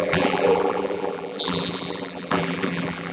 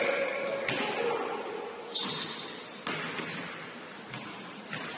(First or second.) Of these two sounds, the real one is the second